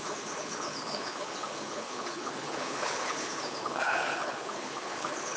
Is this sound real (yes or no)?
no